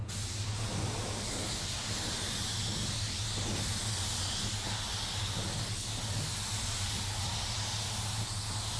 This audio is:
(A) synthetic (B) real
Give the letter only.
B